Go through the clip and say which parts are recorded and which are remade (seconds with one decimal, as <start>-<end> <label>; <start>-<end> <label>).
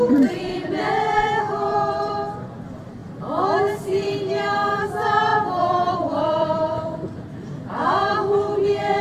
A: 0.0-3.0 remade; 3.0-4.8 recorded; 4.8-9.0 remade